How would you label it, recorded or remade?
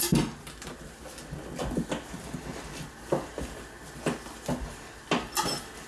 recorded